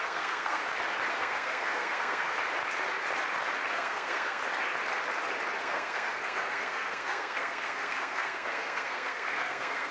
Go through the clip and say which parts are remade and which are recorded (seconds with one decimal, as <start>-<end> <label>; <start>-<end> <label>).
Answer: 0.0-0.6 remade; 0.6-1.1 recorded; 1.1-2.4 remade; 2.4-3.7 recorded; 3.7-4.4 remade; 4.4-5.6 recorded; 5.6-9.9 remade